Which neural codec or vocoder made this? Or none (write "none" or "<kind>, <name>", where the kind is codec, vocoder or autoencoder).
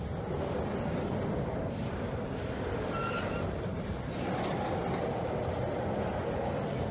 none